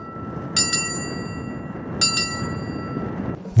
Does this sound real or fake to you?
real